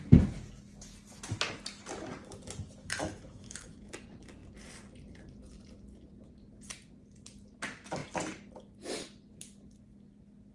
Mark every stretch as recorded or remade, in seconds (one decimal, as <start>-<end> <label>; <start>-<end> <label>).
0.0-2.8 recorded; 2.8-3.9 remade; 3.9-10.5 recorded